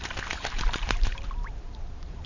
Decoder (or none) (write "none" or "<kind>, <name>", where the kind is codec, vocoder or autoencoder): vocoder, BigVGAN v2